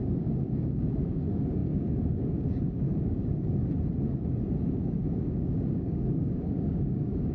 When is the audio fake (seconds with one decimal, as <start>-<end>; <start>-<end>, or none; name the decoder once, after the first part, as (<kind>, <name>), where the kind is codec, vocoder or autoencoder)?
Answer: 0.0-3.6 (codec, DAC); 4.7-7.3